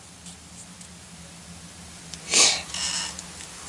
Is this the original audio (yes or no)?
yes